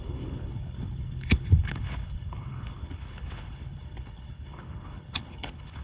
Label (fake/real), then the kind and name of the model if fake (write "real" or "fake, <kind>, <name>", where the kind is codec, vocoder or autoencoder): fake, codec, HILCodec